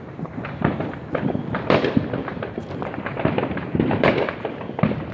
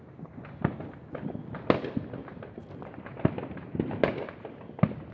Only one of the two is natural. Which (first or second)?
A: second